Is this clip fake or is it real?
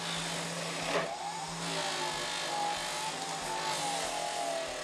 real